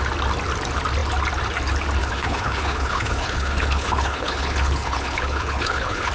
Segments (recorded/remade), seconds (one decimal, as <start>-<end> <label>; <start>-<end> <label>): 0.0-2.0 recorded; 2.0-6.1 remade